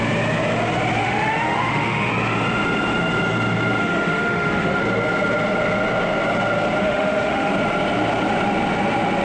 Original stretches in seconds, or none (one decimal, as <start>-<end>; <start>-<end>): 0.0-1.0; 2.1-3.8; 4.8-6.8; 7.5-9.2